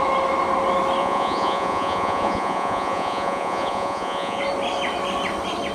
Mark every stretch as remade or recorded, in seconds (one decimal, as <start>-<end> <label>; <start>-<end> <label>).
0.0-1.0 recorded; 1.0-4.4 remade; 4.4-5.7 recorded